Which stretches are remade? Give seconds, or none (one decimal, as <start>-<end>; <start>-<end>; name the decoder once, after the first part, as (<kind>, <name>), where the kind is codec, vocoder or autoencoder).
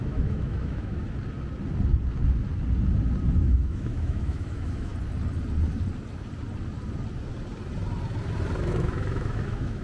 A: 0.0-1.0 (autoencoder, DAC-VAE); 3.4-4.9; 8.6-9.8